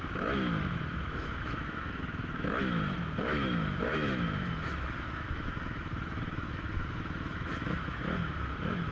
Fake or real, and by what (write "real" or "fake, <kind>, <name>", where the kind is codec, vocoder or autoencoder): fake, autoencoder, DAC-VAE